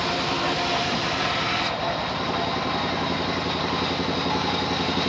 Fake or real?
real